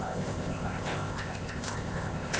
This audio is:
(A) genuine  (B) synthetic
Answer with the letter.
B